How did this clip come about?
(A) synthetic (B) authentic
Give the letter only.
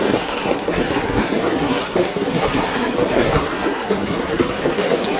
A